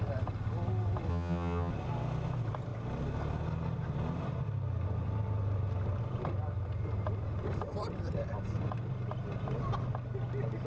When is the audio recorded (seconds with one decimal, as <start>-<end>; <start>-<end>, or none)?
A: 0.0-1.1; 1.7-10.7